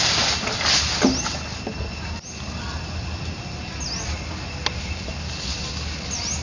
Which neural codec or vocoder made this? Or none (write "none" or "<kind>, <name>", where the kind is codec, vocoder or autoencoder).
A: none